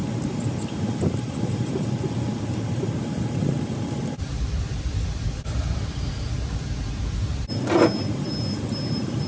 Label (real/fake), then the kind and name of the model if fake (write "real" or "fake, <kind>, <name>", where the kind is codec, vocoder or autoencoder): real